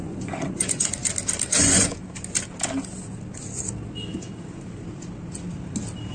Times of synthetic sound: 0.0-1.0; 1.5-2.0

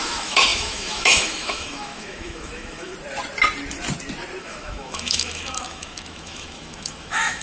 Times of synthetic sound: 0.0-2.9; 4.4-7.4

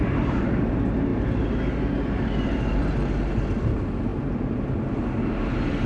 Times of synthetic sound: none

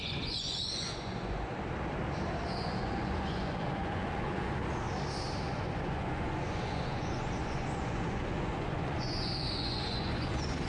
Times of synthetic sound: 0.0-1.5; 2.4-4.6; 5.5-10.7